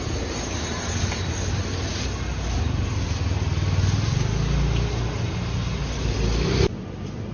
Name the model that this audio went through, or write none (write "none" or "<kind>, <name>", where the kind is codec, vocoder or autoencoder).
none